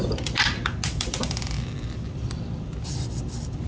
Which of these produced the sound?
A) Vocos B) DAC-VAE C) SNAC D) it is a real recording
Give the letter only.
D